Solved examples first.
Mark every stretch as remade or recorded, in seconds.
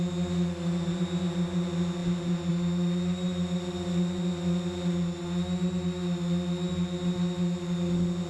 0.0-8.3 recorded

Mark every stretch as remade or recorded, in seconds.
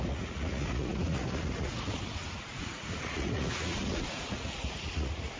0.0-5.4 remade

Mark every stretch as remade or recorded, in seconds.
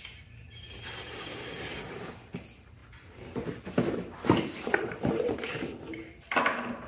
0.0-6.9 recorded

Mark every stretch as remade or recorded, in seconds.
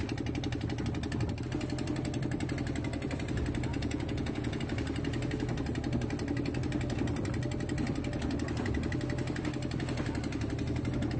0.0-3.7 recorded; 3.7-4.6 remade; 4.6-11.2 recorded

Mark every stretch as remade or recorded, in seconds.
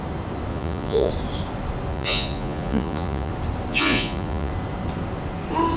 0.0-0.5 recorded; 0.5-1.1 remade; 1.1-1.9 recorded; 1.9-3.3 remade; 3.3-3.7 recorded; 3.7-4.5 remade; 4.5-5.8 recorded